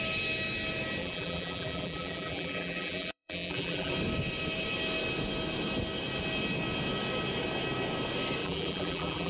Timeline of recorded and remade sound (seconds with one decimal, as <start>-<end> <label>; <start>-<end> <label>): 0.0-1.0 recorded; 1.0-3.9 remade; 3.9-8.4 recorded; 8.4-9.3 remade